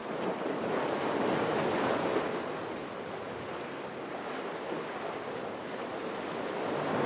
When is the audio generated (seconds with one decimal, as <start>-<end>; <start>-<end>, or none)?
none